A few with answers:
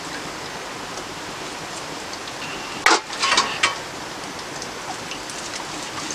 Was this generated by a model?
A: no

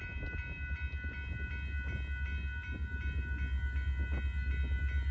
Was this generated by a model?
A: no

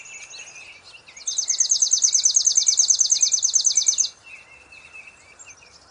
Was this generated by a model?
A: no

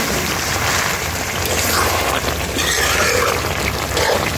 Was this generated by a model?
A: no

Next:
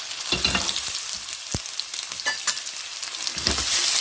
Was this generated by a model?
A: no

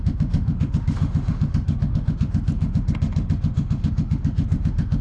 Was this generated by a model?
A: yes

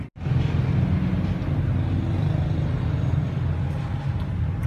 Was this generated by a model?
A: no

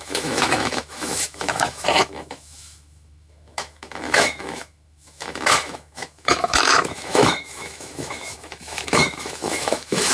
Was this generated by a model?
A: yes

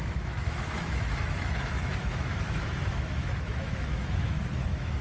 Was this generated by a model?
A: yes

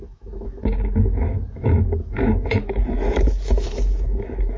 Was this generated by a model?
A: yes